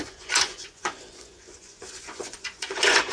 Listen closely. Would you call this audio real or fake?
fake